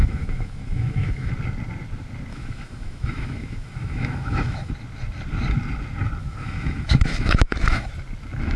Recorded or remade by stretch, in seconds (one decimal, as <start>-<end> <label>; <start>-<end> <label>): 0.0-1.3 remade; 1.3-2.3 recorded; 2.3-4.7 remade; 4.7-6.2 recorded; 6.2-7.9 remade; 7.9-8.6 recorded